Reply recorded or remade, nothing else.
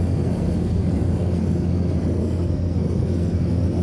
remade